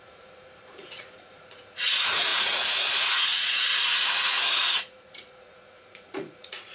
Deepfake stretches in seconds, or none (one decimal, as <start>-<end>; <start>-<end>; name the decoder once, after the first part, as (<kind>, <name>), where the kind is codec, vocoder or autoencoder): 0.0-6.7 (vocoder, Vocos)